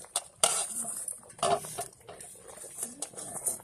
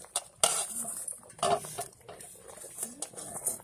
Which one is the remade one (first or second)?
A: first